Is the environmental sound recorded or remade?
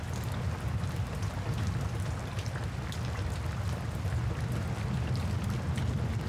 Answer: recorded